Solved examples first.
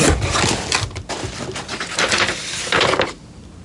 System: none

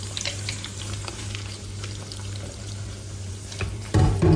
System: vocoder, BigVGAN v2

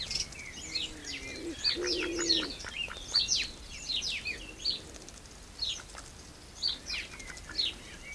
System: none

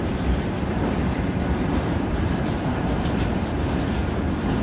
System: vocoder, BigVGAN v2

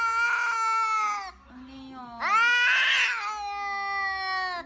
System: none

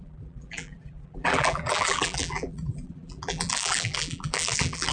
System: vocoder, BigVGAN v2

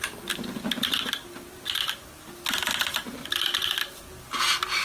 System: none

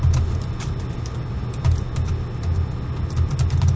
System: none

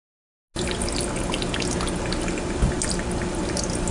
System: none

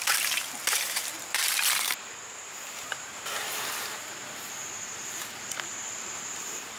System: vocoder, BigVGAN v2